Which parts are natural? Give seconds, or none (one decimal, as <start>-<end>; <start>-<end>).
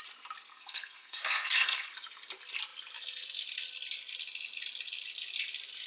0.0-0.5; 1.9-5.9